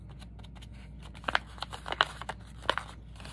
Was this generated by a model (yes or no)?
no